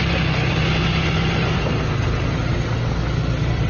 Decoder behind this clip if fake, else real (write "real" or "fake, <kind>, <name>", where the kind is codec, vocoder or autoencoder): real